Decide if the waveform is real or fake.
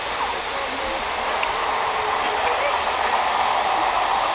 real